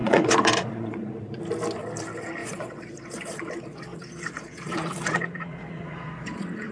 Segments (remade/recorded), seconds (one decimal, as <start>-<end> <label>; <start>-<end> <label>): 0.0-1.4 remade; 1.4-2.4 recorded; 2.4-6.7 remade